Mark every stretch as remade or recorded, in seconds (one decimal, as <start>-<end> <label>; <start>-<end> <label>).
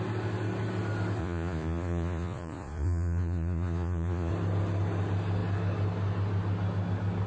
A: 0.0-1.2 recorded; 1.2-4.3 remade; 4.3-7.3 recorded